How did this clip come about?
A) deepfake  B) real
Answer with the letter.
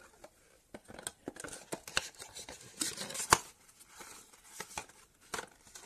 B